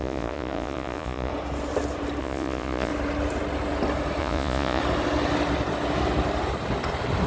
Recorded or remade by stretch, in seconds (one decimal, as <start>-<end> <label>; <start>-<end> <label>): 0.0-1.3 remade; 1.3-2.2 recorded; 2.2-2.9 remade; 2.9-4.2 recorded; 4.2-4.8 remade; 4.8-7.3 recorded